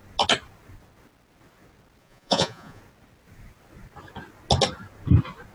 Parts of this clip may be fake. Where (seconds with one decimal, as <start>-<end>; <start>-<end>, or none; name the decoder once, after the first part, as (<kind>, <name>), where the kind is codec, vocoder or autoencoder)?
2.0-2.8 (vocoder, Vocos)